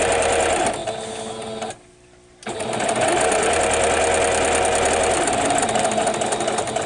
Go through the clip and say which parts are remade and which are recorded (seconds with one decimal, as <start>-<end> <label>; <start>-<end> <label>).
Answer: 0.0-6.9 recorded